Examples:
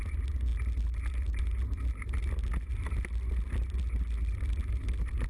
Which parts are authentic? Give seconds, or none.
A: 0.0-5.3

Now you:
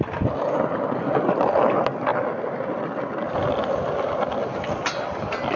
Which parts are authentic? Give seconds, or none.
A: 0.0-5.6

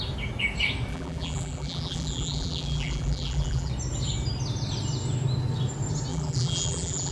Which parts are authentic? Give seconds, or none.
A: 0.0-0.9; 3.7-6.1

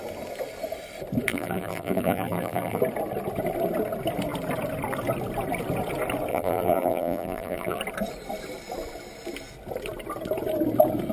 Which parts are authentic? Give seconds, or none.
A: 0.0-1.3; 2.8-6.3; 7.8-11.1

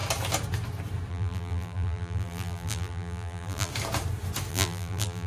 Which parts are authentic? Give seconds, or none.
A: 0.0-1.1; 3.7-4.5